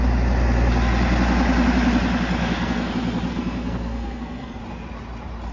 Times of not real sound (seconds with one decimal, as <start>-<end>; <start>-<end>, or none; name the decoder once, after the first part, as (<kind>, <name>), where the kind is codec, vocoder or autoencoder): 2.4-2.9 (codec, SNAC); 3.3-4.6